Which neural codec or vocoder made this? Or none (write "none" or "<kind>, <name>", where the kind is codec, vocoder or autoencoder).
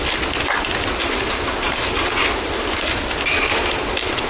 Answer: none